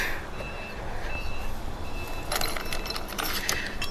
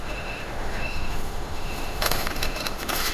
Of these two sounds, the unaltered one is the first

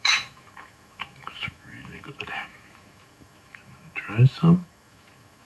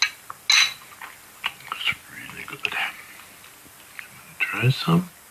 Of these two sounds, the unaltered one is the second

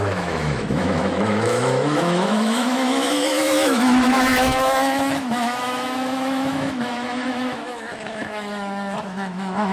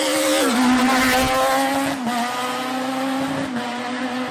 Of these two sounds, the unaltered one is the second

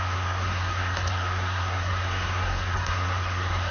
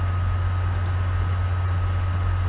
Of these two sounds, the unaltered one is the second